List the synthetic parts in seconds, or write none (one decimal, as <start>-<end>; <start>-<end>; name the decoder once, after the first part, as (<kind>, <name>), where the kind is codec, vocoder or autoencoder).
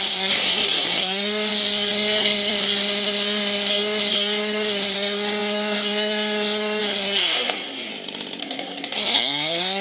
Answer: 0.0-7.9 (codec, SNAC); 8.4-9.8